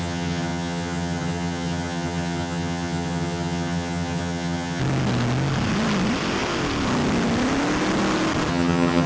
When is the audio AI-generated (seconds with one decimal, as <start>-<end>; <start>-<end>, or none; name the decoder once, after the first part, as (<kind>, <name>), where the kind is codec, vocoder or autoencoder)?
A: 0.0-4.8 (vocoder, HiFi-GAN); 8.5-9.1